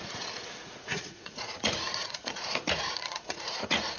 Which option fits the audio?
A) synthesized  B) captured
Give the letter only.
A